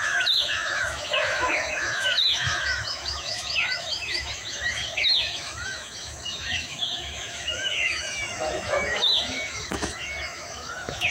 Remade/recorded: remade